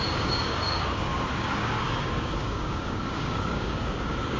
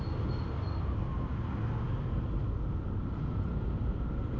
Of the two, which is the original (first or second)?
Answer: second